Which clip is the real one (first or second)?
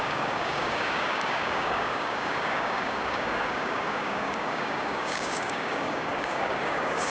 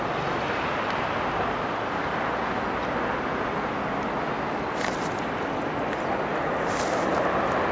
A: second